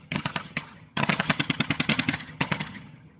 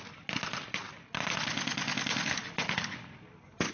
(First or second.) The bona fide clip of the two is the second